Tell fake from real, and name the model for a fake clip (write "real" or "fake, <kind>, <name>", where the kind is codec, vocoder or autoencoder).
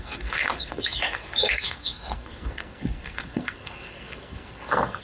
fake, codec, SNAC